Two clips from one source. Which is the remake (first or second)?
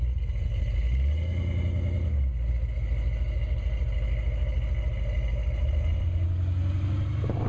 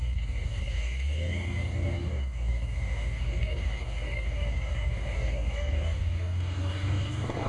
second